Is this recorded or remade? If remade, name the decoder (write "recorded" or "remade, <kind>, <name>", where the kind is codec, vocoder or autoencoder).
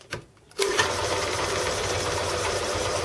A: remade, vocoder, BigVGAN v2